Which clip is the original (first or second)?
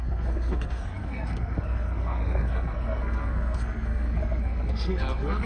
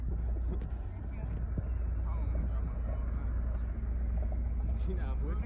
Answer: second